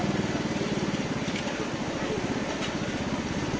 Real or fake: real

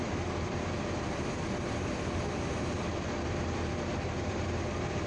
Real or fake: fake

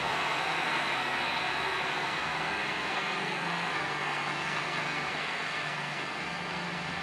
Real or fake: fake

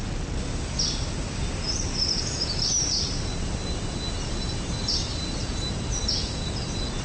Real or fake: real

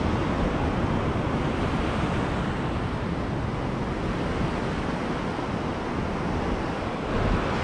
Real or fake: real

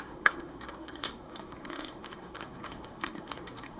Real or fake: fake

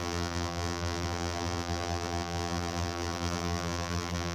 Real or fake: fake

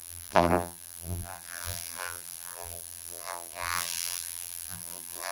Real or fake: fake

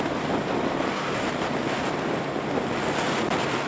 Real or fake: real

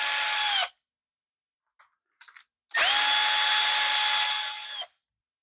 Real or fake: real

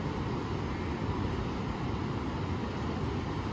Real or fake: real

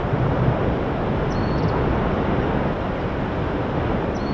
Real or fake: real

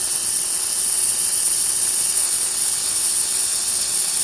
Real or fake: fake